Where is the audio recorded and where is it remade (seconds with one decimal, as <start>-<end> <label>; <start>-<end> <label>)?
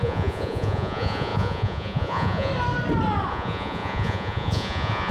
0.0-2.5 remade; 2.5-3.3 recorded; 3.3-5.1 remade